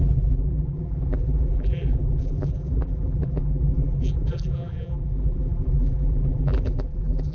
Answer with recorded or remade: remade